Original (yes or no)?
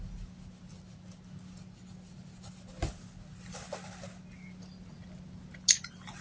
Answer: yes